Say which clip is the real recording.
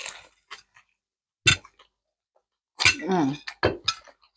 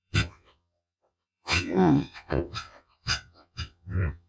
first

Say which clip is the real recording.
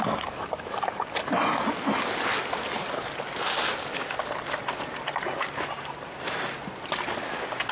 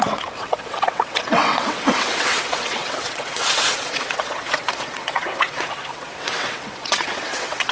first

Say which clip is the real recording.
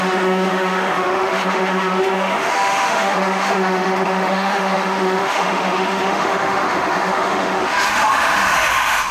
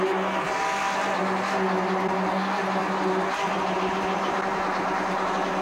second